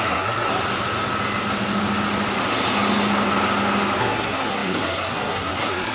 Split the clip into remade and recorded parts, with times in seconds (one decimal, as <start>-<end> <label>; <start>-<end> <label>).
0.0-0.5 remade; 0.5-4.0 recorded; 4.0-5.9 remade